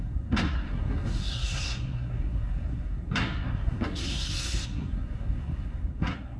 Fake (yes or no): yes